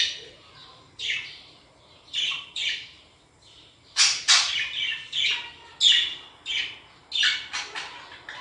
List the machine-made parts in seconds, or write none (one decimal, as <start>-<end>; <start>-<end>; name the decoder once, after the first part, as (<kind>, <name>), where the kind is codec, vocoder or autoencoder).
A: 0.6-4.5 (vocoder, BigVGAN v2)